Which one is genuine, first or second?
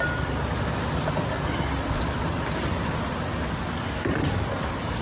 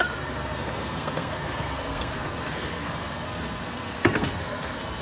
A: first